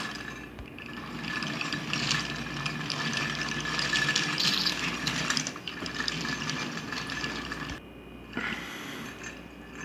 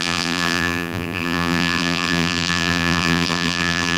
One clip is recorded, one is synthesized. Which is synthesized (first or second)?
second